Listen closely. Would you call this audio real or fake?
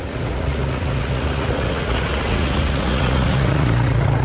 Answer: fake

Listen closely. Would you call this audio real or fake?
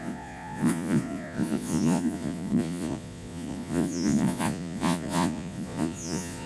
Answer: fake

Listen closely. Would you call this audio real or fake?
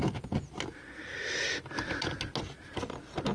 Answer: real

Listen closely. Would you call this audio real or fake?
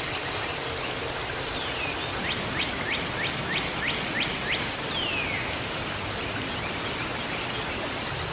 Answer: real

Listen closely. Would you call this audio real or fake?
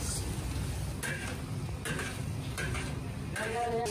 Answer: real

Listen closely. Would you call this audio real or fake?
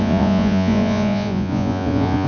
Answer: fake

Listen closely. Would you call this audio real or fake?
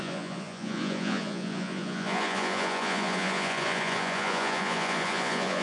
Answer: fake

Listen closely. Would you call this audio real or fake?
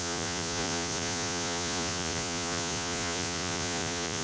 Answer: fake